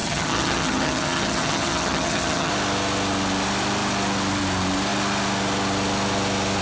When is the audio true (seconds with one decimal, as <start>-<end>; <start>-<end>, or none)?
2.5-6.6